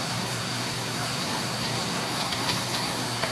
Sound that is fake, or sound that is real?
fake